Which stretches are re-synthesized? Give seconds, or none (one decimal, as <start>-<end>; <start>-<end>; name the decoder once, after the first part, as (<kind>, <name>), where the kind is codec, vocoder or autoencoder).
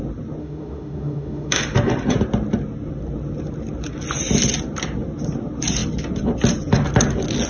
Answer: 0.4-1.6 (autoencoder, DAC-VAE)